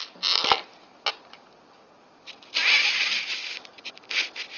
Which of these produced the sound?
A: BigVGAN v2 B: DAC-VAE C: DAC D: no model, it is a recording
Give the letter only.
D